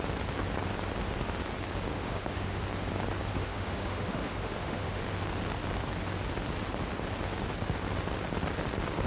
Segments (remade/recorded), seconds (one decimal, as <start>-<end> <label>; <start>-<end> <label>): 0.0-1.9 recorded; 1.9-2.6 remade; 2.6-3.3 recorded; 3.3-5.0 remade; 5.0-9.1 recorded